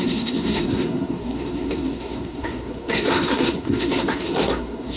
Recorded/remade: remade